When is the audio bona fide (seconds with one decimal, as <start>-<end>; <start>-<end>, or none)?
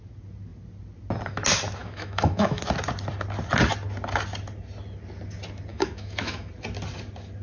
0.0-1.8; 2.6-5.7; 6.5-7.4